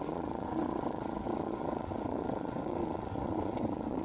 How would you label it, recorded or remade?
remade